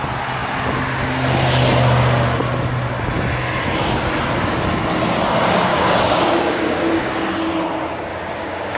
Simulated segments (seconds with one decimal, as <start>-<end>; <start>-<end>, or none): 5.7-7.1; 8.1-8.8